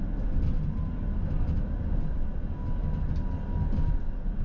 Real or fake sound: real